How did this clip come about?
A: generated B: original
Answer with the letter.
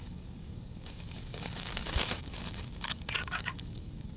A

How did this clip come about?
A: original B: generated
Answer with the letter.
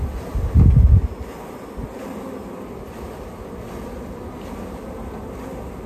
A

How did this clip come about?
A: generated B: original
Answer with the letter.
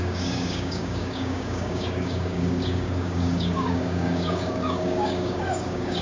A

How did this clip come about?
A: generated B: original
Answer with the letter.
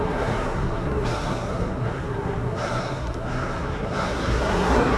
A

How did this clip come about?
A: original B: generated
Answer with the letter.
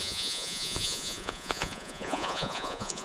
B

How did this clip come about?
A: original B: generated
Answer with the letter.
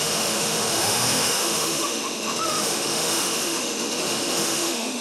B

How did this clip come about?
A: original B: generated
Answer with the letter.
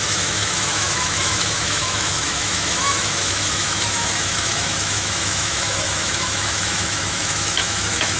B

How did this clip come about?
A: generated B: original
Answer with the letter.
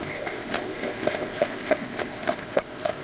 A